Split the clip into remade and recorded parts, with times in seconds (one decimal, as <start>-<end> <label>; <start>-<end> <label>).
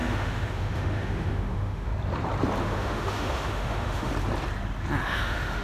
0.0-1.9 remade; 1.9-2.6 recorded; 2.6-4.1 remade; 4.1-5.0 recorded; 5.0-5.6 remade